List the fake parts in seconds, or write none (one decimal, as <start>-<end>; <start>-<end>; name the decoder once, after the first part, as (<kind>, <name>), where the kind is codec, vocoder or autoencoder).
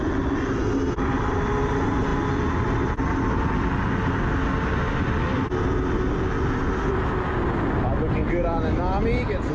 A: none